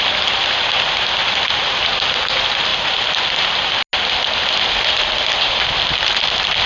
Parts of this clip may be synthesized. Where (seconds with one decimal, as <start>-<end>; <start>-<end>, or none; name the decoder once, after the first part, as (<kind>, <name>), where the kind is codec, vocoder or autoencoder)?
none